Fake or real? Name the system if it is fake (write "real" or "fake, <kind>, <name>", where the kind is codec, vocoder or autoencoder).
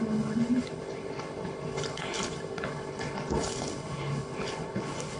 fake, codec, HILCodec